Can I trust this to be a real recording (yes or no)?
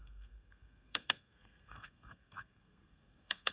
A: no